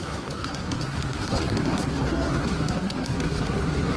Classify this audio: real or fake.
fake